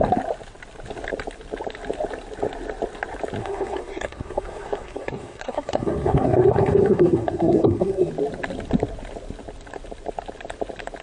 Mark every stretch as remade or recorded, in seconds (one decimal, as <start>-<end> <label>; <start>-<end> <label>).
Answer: 0.0-3.4 recorded; 3.4-8.1 remade; 8.1-11.0 recorded